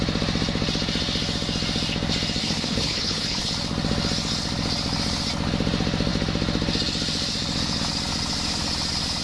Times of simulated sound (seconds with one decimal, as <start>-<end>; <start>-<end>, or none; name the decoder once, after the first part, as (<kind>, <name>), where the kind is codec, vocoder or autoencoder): 2.4-3.5 (codec, HILCodec)